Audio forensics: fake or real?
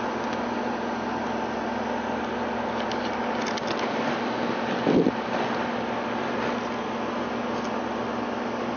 real